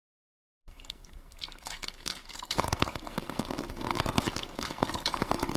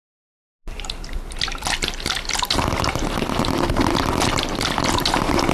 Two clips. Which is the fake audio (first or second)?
first